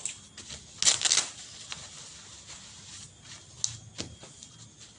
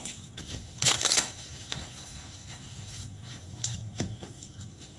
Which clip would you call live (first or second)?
first